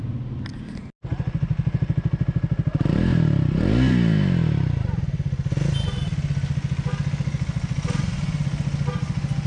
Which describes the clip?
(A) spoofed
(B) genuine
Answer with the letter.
B